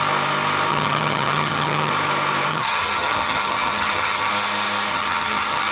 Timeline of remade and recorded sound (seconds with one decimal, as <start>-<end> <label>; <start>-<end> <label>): 0.0-0.7 recorded; 0.7-1.9 remade; 1.9-2.5 recorded; 2.5-4.3 remade; 4.3-4.9 recorded; 4.9-5.7 remade